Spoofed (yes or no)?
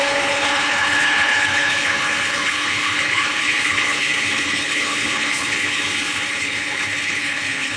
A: yes